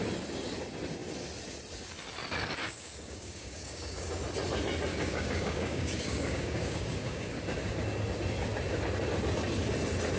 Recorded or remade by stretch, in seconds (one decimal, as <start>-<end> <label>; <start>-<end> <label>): 0.0-2.6 recorded; 2.6-4.2 remade; 4.2-4.9 recorded; 4.9-7.4 remade; 7.4-10.2 recorded